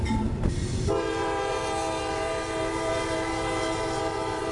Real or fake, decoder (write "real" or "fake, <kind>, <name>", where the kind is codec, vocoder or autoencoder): fake, vocoder, BigVGAN v2